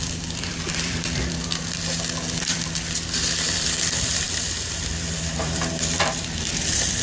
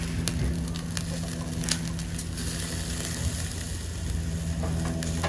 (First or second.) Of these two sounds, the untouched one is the second